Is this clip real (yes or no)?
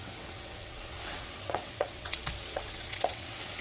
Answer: no